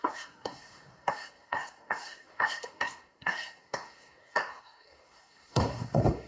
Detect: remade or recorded remade